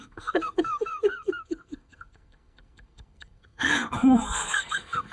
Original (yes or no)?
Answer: no